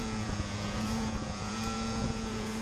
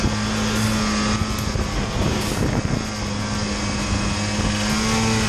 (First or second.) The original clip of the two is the second